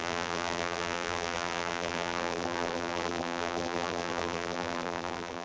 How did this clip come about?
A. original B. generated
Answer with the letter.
B